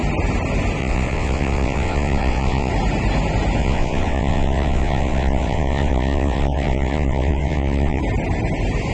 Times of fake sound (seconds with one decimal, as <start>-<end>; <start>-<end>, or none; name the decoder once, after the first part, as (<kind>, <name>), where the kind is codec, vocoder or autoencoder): 0.8-2.7 (vocoder, WaveNeXt); 3.6-8.0